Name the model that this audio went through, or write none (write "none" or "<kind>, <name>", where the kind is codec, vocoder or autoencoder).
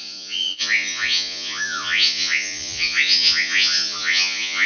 vocoder, Vocos